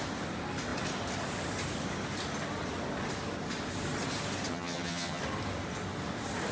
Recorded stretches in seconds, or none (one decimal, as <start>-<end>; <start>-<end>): 0.0-4.5; 5.2-6.5